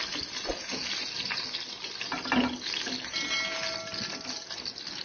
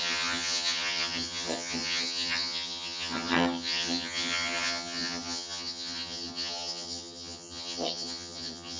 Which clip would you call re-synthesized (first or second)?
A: second